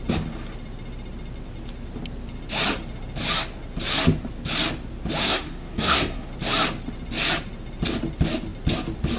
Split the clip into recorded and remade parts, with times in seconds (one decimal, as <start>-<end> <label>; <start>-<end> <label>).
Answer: 0.0-5.2 recorded; 5.2-6.3 remade; 6.3-9.2 recorded